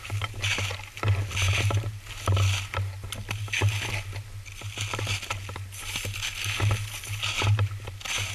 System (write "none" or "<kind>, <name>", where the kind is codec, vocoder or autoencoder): none